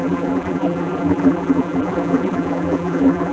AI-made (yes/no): yes